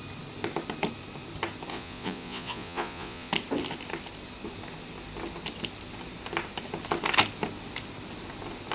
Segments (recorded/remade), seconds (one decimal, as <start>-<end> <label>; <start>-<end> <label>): 0.0-1.7 recorded; 1.7-3.3 remade; 3.3-8.7 recorded